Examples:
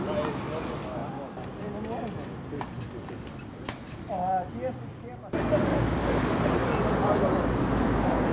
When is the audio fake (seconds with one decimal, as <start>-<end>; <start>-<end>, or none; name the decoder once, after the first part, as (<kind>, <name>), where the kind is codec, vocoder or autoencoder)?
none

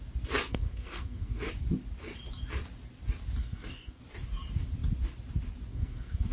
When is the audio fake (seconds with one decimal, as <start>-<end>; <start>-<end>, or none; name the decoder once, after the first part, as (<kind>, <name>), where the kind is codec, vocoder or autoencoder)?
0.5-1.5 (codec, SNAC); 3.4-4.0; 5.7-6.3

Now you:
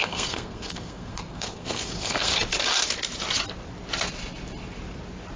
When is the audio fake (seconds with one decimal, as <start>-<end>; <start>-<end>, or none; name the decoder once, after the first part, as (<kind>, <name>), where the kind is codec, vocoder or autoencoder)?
0.0-2.3 (codec, SNAC)